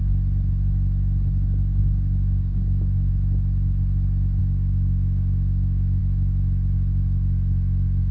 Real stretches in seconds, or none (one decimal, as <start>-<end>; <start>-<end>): 0.0-1.8; 3.1-4.4; 6.0-8.1